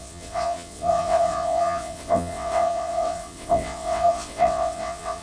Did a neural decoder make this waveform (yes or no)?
yes